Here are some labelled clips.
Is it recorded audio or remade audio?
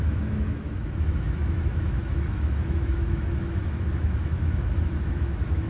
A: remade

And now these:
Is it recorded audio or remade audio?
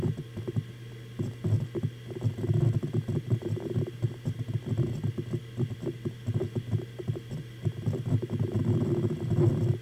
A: recorded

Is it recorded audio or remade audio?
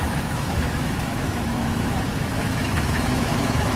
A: remade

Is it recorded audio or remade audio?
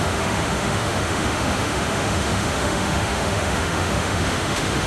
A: remade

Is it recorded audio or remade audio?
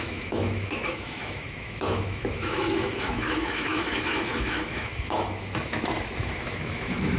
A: remade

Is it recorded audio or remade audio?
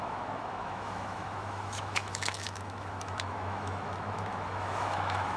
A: remade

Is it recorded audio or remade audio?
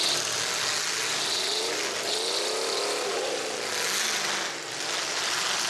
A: recorded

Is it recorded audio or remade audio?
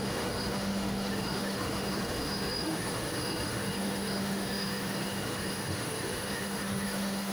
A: remade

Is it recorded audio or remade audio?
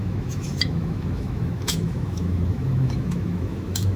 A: remade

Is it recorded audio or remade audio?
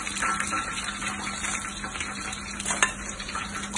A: recorded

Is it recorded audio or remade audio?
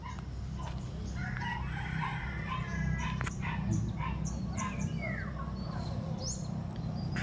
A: recorded